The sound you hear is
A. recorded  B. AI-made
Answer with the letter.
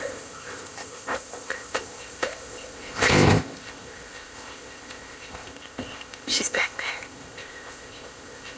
B